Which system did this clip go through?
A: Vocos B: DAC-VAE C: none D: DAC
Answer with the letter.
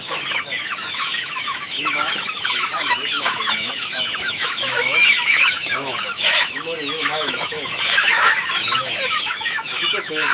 B